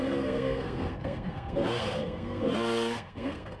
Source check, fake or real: fake